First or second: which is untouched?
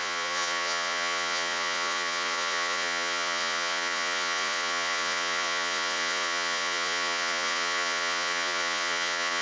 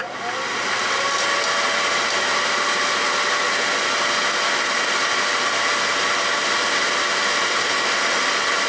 second